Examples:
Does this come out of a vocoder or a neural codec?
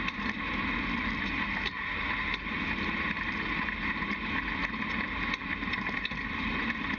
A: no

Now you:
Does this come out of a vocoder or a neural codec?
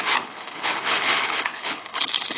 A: yes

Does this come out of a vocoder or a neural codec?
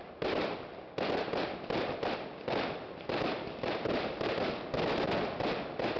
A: no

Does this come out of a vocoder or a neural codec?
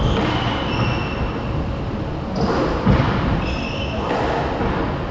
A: no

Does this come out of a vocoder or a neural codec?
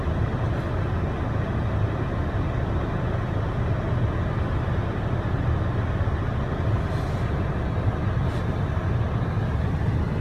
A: no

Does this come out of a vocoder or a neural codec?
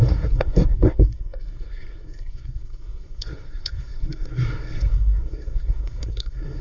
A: yes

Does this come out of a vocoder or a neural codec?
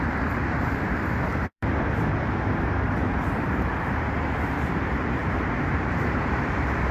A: yes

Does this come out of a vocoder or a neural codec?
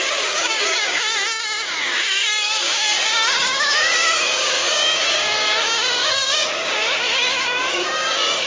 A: yes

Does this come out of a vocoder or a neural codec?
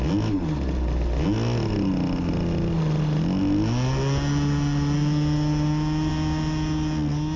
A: no